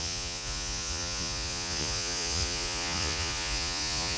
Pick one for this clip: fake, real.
fake